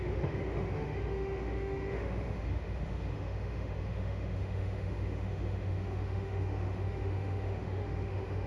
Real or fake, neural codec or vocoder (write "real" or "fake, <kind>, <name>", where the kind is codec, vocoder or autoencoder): fake, autoencoder, DAC-VAE